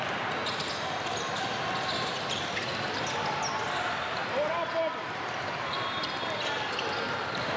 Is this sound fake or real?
real